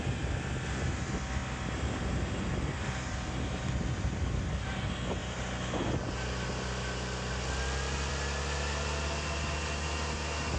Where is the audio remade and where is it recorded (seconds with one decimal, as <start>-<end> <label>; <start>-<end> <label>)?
0.0-10.6 recorded